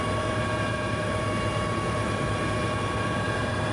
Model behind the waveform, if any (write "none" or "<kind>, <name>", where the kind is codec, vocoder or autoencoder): vocoder, BigVGAN v2